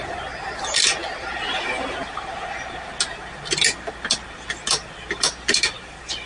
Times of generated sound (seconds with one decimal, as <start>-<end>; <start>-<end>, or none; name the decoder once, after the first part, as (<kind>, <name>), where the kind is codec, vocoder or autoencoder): none